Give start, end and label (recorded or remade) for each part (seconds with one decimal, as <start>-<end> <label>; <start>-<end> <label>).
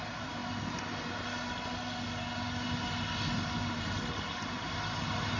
0.0-0.4 remade; 0.4-3.6 recorded; 3.6-5.4 remade